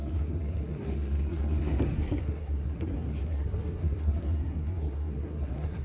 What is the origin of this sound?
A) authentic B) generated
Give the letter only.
B